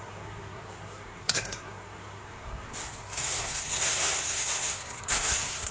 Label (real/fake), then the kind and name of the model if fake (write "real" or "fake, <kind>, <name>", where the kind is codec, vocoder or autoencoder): fake, codec, SNAC